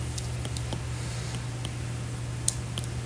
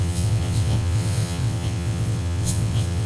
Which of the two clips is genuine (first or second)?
first